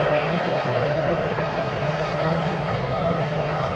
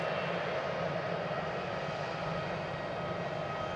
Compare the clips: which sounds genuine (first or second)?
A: second